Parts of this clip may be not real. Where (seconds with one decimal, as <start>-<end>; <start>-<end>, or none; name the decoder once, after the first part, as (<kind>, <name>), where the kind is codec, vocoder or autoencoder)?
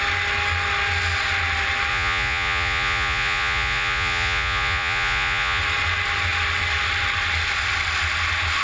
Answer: 1.9-5.6 (vocoder, Vocos)